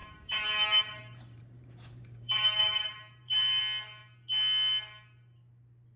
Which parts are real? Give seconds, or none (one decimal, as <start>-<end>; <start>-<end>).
3.6-6.0